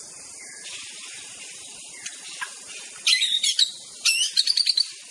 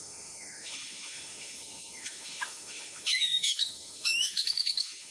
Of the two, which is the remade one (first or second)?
second